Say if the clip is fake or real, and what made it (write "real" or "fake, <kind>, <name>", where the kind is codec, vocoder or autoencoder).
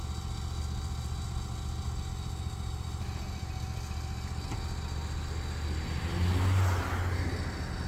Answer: real